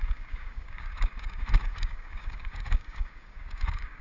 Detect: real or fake fake